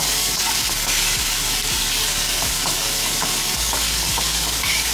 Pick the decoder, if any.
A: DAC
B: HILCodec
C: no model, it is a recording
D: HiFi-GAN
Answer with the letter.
A